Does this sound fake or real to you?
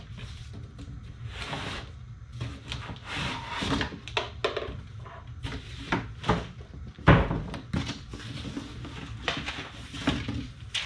real